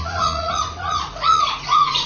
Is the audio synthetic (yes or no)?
yes